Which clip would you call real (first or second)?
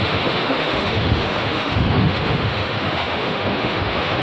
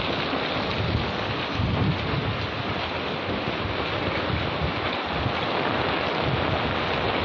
second